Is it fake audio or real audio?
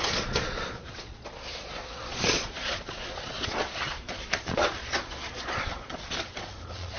fake